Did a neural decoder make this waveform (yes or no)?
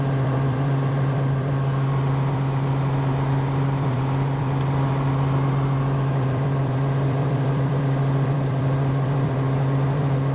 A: yes